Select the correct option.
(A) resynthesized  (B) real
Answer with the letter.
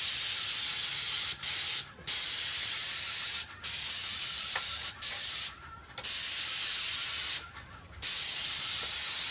B